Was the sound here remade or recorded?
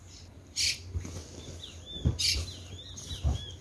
recorded